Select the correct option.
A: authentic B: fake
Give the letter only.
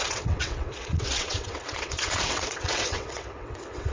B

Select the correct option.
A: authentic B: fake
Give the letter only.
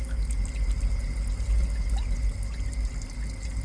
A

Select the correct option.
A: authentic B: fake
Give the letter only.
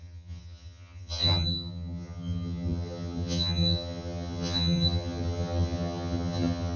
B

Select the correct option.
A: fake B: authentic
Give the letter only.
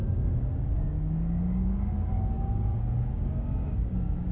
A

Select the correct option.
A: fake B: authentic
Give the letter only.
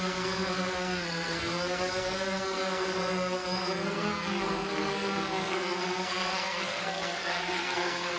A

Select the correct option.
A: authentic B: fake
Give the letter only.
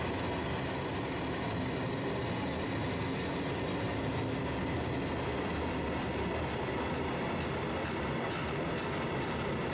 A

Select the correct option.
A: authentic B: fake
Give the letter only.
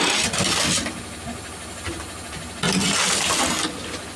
A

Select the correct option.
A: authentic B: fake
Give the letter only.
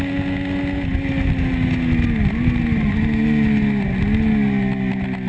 A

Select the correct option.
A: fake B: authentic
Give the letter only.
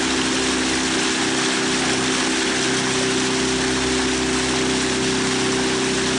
B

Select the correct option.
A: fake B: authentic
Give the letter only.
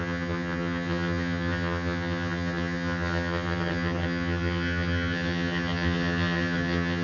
A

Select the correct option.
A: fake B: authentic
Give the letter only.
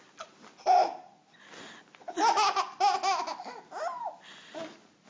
B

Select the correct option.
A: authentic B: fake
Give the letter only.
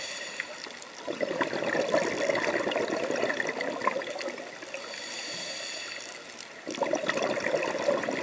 A